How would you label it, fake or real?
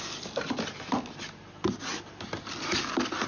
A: real